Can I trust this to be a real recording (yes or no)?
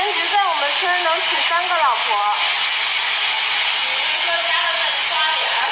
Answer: yes